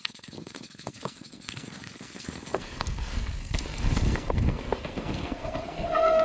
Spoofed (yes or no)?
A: yes